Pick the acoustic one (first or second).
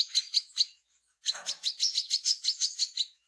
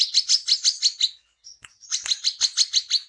second